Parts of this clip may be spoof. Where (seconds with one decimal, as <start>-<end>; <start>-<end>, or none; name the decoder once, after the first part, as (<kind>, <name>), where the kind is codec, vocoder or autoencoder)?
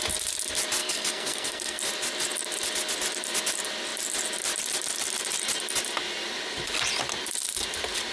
0.8-1.8 (codec, SNAC)